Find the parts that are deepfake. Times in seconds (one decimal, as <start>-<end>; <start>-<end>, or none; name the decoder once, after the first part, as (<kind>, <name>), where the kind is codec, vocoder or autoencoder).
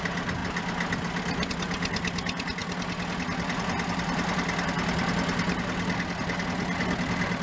none